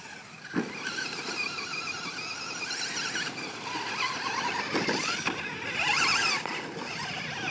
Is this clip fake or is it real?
real